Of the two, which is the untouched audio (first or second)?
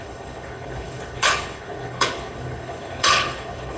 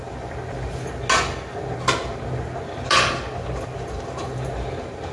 second